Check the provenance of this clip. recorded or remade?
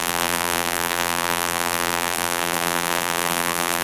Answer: remade